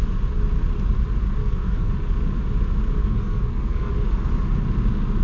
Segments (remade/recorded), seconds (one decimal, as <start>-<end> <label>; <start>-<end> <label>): 0.0-1.4 recorded; 1.4-1.9 remade; 1.9-3.0 recorded; 3.0-3.9 remade; 3.9-5.2 recorded